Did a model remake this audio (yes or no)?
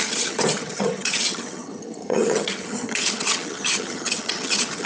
yes